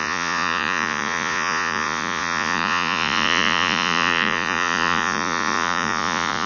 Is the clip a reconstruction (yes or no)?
yes